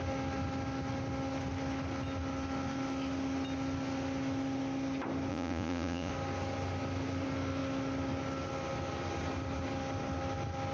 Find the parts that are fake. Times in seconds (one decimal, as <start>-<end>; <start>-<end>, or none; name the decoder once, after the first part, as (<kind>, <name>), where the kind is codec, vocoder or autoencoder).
5.3-6.1 (vocoder, Vocos)